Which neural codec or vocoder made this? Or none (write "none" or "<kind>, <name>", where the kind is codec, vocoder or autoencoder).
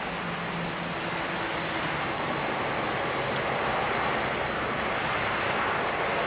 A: none